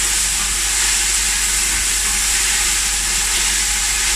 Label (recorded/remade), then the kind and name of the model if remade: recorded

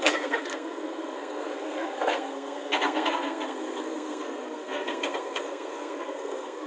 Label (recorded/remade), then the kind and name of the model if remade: remade, codec, SNAC